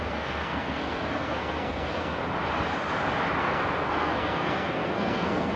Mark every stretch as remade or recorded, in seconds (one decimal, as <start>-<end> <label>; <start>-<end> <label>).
0.0-2.2 remade; 2.2-3.4 recorded; 3.4-5.6 remade